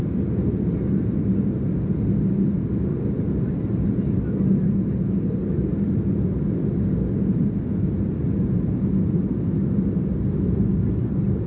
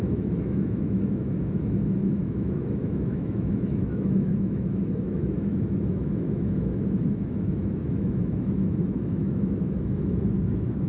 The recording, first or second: first